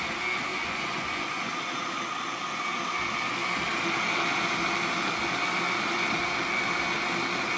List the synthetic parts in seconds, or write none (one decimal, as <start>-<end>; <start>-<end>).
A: 0.5-1.5